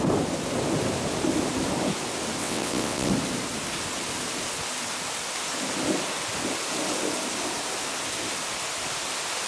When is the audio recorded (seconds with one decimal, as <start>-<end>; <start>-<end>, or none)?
0.0-2.4; 3.1-9.5